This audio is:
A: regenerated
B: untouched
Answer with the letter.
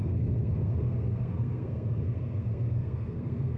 A